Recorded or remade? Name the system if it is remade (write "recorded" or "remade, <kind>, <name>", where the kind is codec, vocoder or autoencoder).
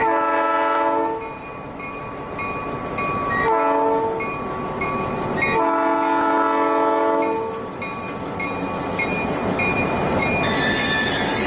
recorded